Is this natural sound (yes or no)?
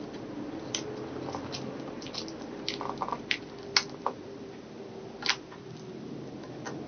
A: yes